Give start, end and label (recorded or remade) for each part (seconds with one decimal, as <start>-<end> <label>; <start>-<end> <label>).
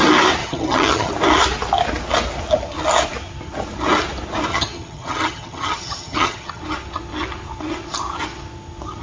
0.0-0.4 recorded; 0.4-1.1 remade; 1.1-4.5 recorded; 4.5-6.6 remade; 6.6-9.0 recorded